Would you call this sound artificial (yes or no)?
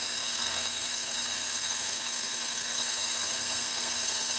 yes